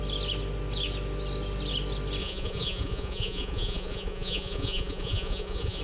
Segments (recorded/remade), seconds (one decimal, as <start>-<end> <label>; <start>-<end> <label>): 0.0-2.2 recorded; 2.2-5.8 remade